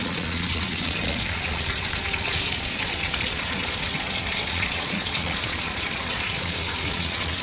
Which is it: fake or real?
fake